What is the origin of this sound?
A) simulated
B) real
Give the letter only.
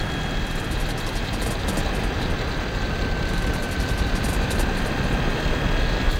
B